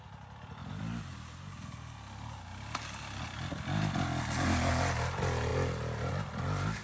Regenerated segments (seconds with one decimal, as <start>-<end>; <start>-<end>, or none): none